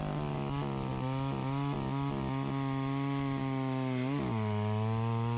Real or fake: real